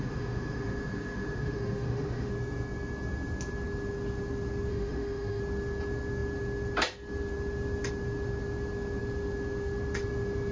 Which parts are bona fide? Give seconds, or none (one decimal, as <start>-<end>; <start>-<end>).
2.3-4.7; 5.4-10.5